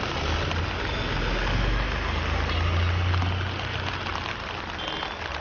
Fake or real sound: real